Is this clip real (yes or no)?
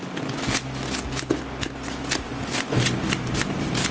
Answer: yes